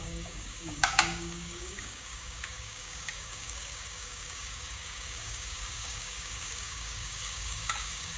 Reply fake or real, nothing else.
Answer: fake